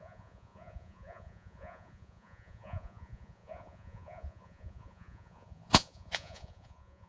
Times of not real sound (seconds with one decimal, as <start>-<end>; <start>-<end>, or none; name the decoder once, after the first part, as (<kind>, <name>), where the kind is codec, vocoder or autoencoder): 0.0-7.1 (vocoder, Vocos)